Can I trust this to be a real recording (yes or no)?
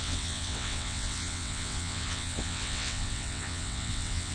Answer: no